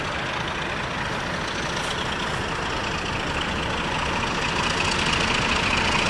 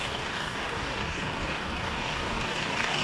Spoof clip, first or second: second